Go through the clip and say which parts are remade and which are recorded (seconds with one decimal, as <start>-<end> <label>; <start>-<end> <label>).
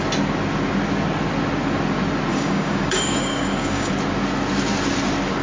0.0-2.3 recorded; 2.3-3.9 remade; 3.9-5.4 recorded